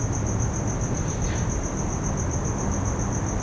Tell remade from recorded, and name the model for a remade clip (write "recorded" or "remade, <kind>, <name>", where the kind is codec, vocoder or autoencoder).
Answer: recorded